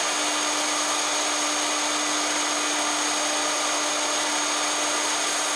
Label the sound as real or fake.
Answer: real